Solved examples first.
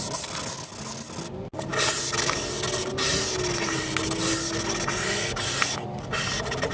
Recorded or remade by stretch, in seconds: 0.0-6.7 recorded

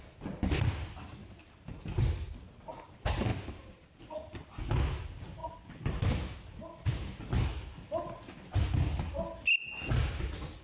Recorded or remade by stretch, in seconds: 0.0-1.2 recorded; 1.2-2.0 remade; 2.0-3.3 recorded; 3.3-4.0 remade; 4.0-10.6 recorded

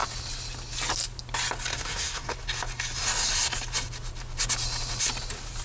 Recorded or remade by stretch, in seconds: 0.0-1.7 recorded; 1.7-2.3 remade; 2.3-5.6 recorded

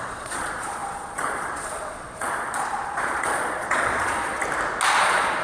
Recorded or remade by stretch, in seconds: 0.0-4.4 remade; 4.4-5.0 recorded; 5.0-5.4 remade

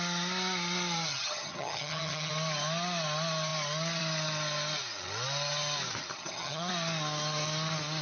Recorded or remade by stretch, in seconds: 0.0-1.1 recorded; 1.1-2.3 remade; 2.3-6.1 recorded; 6.1-6.7 remade; 6.7-8.0 recorded

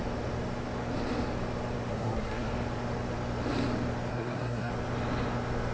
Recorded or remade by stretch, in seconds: 0.0-1.9 recorded; 1.9-2.5 remade; 2.5-4.1 recorded; 4.1-4.7 remade; 4.7-5.7 recorded

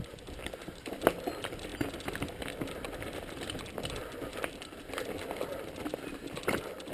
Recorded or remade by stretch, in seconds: 0.0-1.7 remade; 1.7-3.7 recorded; 3.7-5.5 remade; 5.5-6.9 recorded

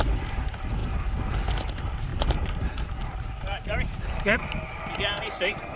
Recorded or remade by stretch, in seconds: 0.0-2.1 recorded; 2.1-4.7 remade; 4.7-5.8 recorded